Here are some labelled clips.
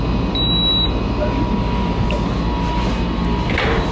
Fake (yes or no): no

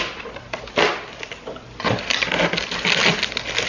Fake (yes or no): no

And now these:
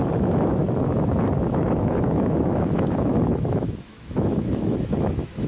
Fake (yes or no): yes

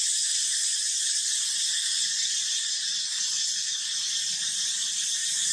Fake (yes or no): no